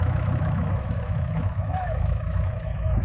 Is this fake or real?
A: fake